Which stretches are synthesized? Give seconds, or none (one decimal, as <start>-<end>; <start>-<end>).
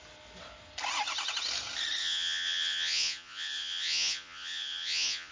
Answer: 2.0-5.3